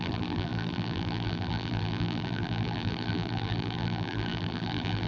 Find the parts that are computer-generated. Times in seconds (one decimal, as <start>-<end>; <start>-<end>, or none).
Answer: 0.0-5.1